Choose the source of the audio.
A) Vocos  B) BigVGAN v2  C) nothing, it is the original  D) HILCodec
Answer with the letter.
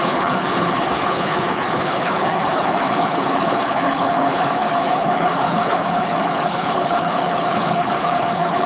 D